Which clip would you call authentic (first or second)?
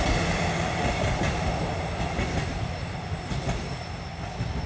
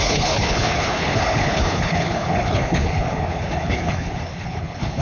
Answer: first